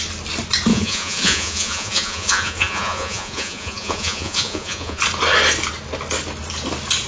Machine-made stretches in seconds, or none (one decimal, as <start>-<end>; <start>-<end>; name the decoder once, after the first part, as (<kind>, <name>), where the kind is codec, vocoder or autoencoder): 0.7-5.0 (vocoder, Vocos)